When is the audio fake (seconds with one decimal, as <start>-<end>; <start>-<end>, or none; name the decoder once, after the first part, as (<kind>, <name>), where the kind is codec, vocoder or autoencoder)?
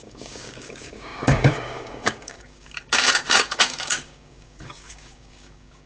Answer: 0.0-5.9 (codec, DAC)